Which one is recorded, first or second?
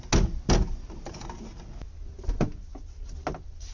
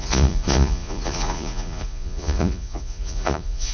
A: first